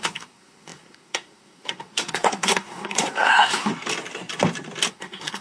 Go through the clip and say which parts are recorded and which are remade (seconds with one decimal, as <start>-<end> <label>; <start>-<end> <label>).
0.0-3.7 remade; 3.7-4.9 recorded; 4.9-5.4 remade

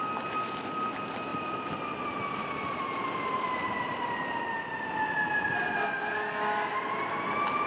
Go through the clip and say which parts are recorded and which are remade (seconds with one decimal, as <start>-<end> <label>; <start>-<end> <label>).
0.0-7.7 recorded

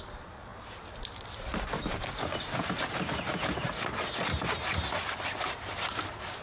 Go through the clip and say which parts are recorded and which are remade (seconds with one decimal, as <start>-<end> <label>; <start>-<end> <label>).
0.0-6.4 recorded

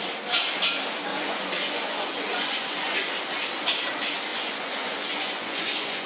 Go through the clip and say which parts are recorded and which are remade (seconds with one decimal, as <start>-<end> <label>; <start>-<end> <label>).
0.0-1.1 recorded; 1.1-3.1 remade; 3.1-4.3 recorded; 4.3-6.1 remade